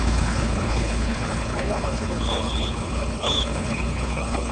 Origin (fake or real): fake